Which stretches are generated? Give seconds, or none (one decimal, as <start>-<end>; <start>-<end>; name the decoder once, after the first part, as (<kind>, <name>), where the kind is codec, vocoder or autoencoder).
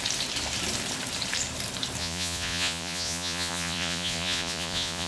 2.0-5.1 (vocoder, Vocos)